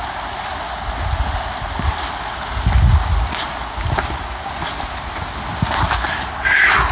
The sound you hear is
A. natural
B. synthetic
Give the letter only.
A